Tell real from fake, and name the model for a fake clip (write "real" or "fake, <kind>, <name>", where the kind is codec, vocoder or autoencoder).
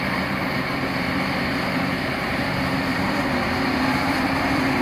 fake, vocoder, BigVGAN v2